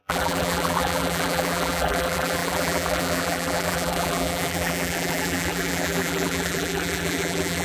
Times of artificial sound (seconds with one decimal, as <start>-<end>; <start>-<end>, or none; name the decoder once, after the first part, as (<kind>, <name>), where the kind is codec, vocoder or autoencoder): 0.0-7.6 (vocoder, BigVGAN v2)